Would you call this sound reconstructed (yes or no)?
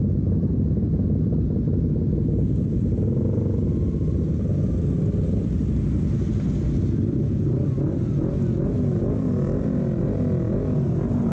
no